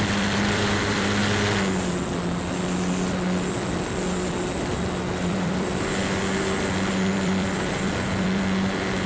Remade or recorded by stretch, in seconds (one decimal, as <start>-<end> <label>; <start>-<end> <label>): 0.0-1.2 remade; 1.2-5.0 recorded; 5.0-9.1 remade